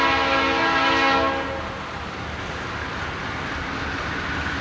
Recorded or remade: recorded